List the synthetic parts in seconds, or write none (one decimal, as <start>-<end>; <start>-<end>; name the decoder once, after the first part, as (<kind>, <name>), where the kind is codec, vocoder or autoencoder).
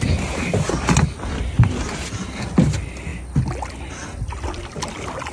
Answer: none